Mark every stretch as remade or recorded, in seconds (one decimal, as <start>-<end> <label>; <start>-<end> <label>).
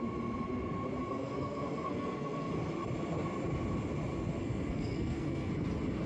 0.0-1.0 recorded; 1.0-2.5 remade; 2.5-4.4 recorded; 4.4-5.5 remade; 5.5-6.1 recorded